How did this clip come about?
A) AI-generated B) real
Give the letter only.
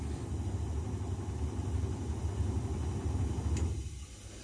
B